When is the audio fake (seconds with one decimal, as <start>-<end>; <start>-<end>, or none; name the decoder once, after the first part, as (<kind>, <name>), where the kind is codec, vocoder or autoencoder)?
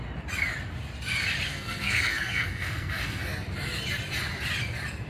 1.5-3.2 (codec, SNAC)